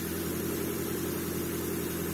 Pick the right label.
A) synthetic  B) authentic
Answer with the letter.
B